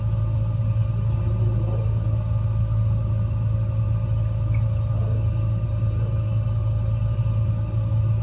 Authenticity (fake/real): real